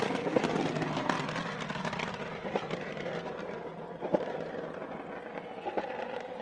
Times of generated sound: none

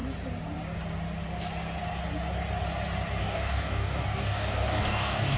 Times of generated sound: 3.2-5.4 (codec, DAC)

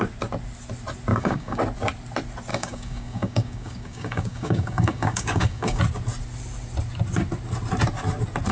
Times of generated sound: 1.1-1.6 (codec, DAC); 2.5-5.8

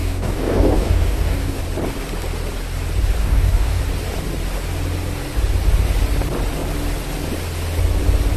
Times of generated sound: 0.0-1.6 (codec, DAC); 3.2-3.8

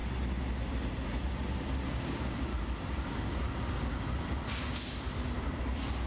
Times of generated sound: 1.9-2.5 (codec, DAC)